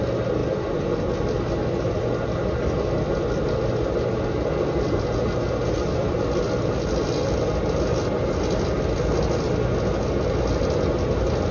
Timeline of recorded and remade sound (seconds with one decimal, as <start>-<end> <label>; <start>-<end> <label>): 0.0-11.5 recorded